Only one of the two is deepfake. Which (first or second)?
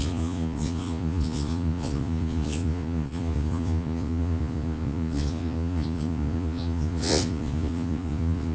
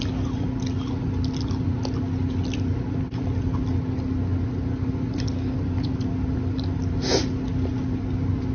first